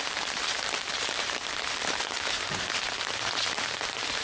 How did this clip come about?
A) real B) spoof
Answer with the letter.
B